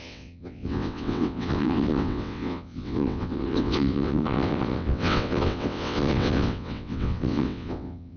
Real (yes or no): no